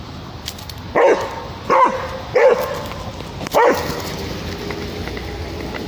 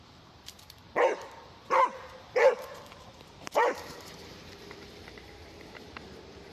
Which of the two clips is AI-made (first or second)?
second